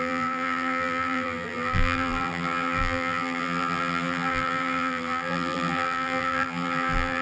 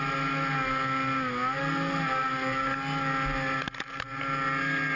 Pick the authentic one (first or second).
second